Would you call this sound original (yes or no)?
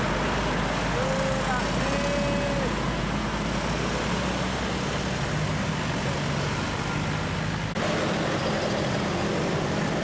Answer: yes